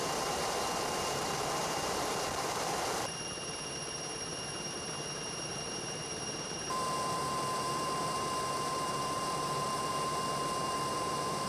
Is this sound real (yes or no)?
no